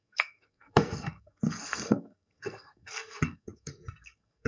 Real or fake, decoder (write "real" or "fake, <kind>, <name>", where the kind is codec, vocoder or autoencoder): fake, codec, SNAC